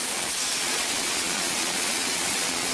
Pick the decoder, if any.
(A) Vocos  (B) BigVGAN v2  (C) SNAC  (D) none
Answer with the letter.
A